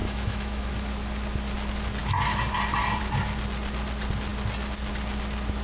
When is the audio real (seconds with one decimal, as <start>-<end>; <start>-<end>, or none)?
0.7-5.6